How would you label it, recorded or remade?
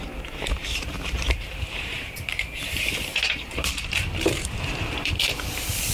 remade